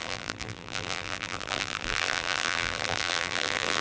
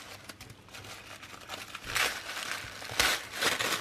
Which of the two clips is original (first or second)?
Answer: second